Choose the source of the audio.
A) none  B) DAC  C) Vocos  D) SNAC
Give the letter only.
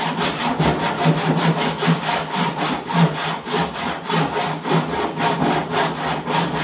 A